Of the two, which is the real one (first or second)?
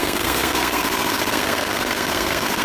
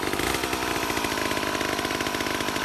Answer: second